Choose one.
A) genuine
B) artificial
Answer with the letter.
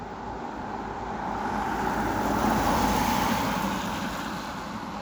B